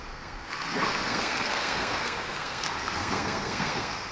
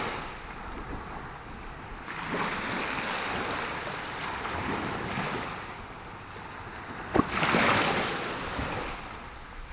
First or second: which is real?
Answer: second